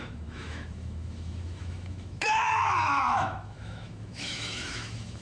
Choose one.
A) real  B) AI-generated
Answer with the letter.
B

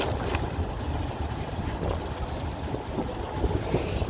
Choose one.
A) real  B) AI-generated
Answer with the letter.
A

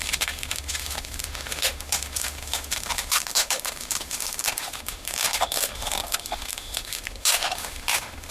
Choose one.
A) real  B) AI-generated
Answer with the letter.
B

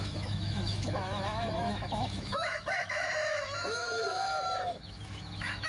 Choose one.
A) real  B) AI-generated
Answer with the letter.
B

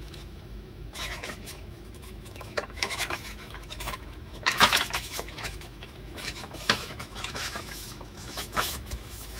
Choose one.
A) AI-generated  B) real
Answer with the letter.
A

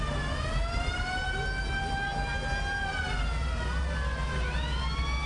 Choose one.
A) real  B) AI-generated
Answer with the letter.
A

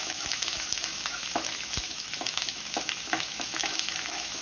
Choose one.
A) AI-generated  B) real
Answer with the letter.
A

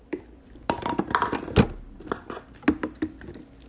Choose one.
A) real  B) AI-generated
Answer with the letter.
A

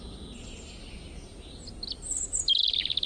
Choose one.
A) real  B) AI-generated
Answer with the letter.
A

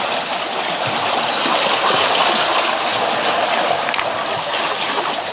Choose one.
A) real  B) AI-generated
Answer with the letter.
A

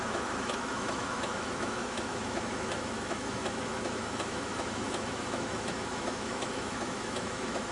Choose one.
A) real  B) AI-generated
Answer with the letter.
B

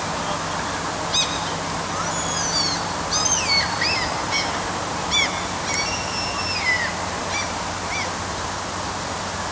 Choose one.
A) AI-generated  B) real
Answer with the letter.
B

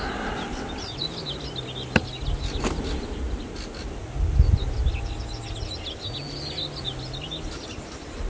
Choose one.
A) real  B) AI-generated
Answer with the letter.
A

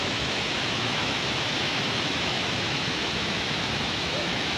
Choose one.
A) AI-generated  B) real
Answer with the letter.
A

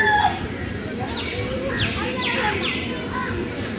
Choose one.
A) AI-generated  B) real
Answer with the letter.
B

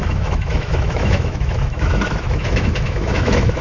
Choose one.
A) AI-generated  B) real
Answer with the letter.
A